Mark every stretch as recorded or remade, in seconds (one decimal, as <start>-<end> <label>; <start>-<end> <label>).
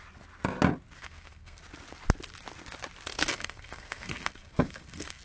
0.0-1.0 recorded; 1.0-1.6 remade; 1.6-3.1 recorded; 3.1-5.2 remade